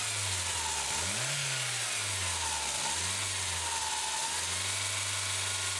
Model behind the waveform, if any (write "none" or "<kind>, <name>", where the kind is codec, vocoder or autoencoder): none